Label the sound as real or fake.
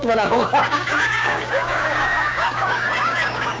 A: fake